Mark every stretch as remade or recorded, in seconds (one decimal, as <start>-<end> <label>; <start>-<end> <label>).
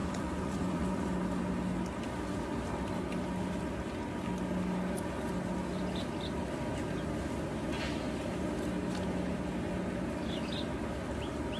0.0-1.1 remade; 1.1-11.6 recorded